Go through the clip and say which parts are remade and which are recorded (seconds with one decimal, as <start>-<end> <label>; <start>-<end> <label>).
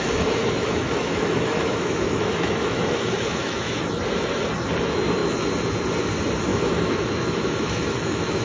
0.0-0.4 recorded; 0.4-3.9 remade; 3.9-6.5 recorded; 6.5-8.4 remade